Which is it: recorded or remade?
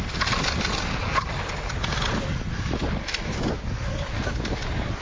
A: recorded